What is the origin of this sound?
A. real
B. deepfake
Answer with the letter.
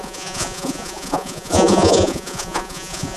B